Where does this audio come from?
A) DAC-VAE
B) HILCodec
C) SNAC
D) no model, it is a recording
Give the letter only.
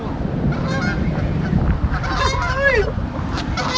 D